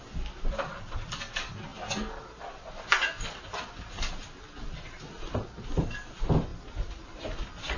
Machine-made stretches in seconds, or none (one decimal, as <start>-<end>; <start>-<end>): none